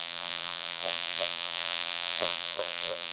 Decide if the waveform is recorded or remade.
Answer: remade